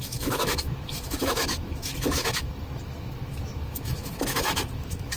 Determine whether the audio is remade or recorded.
remade